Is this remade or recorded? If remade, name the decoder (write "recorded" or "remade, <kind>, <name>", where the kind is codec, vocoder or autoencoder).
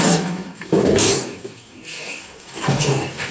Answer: remade, codec, DAC